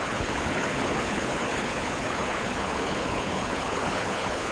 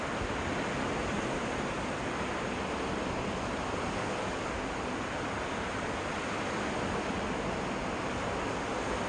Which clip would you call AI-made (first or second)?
first